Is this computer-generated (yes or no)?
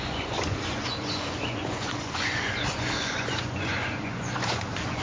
yes